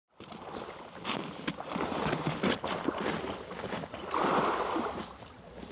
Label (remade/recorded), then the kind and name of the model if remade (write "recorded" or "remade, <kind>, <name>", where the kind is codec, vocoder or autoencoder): recorded